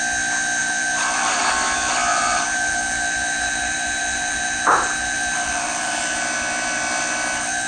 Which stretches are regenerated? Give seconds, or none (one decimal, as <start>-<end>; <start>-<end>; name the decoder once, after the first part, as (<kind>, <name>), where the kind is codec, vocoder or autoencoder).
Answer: 0.6-1.4 (vocoder, BigVGAN v2); 2.1-6.0